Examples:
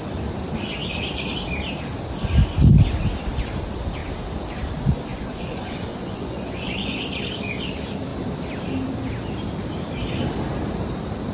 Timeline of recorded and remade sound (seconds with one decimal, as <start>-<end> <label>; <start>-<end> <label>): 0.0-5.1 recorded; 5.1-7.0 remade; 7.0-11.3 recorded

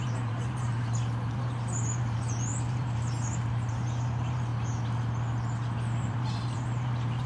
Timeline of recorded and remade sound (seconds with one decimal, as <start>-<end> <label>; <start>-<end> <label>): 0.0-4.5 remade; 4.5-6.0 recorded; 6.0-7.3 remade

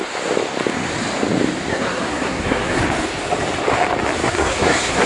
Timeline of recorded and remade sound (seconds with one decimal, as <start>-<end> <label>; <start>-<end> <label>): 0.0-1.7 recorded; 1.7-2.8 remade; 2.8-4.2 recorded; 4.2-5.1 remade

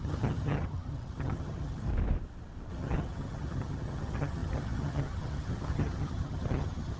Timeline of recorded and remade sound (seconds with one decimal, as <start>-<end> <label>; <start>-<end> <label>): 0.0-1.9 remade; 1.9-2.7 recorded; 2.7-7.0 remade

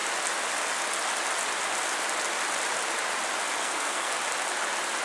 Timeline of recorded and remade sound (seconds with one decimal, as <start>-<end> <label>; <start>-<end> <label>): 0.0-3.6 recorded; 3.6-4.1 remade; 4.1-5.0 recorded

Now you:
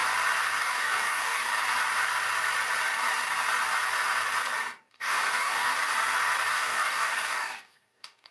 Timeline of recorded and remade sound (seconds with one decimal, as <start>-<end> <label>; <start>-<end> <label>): 0.0-0.6 recorded; 0.6-1.5 remade; 1.5-4.9 recorded; 4.9-5.7 remade; 5.7-6.5 recorded; 6.5-8.3 remade

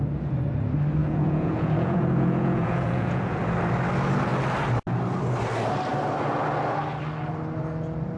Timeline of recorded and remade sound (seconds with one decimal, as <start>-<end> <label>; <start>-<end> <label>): 0.0-1.0 recorded; 1.0-3.4 remade; 3.4-8.2 recorded

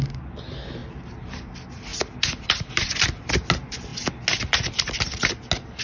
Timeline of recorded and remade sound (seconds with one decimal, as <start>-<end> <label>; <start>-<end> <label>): 0.0-5.8 recorded